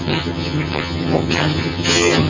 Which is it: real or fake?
fake